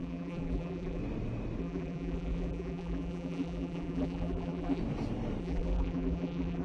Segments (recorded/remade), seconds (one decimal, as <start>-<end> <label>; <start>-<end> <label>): 0.0-1.0 remade; 1.0-1.6 recorded; 1.6-4.8 remade; 4.8-5.4 recorded; 5.4-6.6 remade